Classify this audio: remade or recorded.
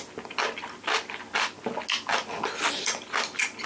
recorded